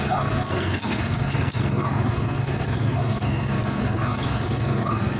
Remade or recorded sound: remade